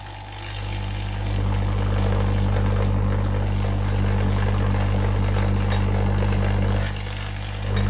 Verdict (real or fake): real